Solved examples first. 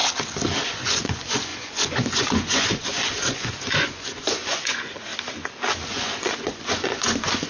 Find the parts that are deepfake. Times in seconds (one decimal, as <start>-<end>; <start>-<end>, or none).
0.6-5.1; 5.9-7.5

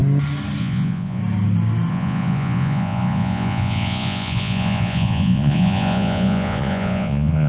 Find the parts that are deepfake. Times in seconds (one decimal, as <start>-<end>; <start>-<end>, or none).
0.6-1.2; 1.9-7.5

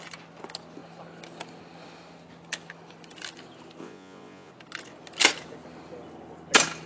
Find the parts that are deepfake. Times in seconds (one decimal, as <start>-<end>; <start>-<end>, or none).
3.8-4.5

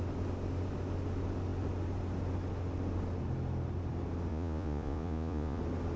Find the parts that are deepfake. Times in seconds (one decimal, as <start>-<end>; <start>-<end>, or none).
4.3-5.6